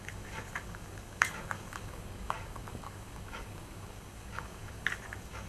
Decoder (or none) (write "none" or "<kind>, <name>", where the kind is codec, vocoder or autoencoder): codec, DAC